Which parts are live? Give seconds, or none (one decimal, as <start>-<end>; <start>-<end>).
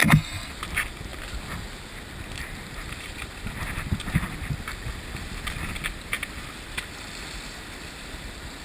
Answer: 0.5-8.6